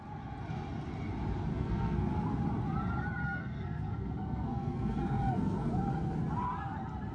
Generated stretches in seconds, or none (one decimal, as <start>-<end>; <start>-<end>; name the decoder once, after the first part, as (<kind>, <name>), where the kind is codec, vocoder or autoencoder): 1.5-2.1 (codec, SNAC); 3.2-5.7